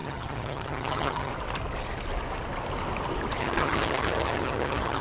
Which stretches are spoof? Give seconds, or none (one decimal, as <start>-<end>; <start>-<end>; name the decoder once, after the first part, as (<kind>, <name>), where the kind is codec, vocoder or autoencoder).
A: 0.0-1.3 (vocoder, HiFi-GAN); 3.4-5.0